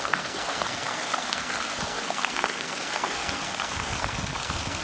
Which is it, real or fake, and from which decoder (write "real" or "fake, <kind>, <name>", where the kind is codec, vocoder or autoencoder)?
fake, codec, SNAC